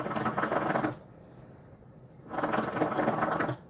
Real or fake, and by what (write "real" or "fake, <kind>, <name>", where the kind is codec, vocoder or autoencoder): real